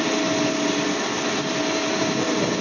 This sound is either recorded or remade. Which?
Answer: recorded